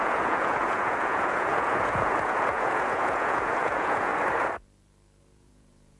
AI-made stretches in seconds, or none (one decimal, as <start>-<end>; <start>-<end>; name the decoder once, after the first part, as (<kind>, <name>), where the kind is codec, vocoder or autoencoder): 0.0-4.1 (vocoder, Vocos); 5.2-6.0